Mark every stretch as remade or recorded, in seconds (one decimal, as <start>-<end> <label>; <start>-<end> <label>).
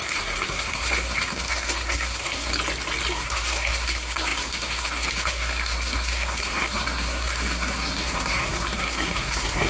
0.0-2.5 remade; 2.5-3.1 recorded; 3.1-9.7 remade